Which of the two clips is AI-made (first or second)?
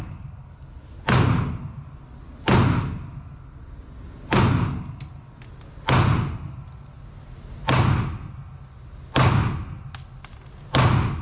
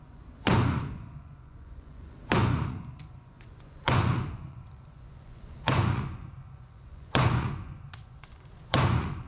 second